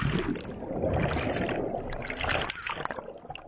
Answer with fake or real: real